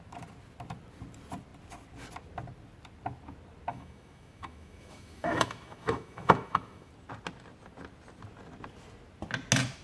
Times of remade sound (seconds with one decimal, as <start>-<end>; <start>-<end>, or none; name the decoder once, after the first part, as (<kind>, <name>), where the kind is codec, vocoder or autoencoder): 3.7-6.9 (autoencoder, DAC-VAE)